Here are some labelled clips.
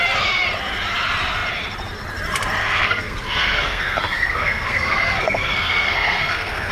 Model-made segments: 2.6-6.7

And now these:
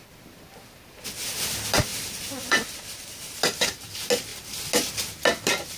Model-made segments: 1.9-3.4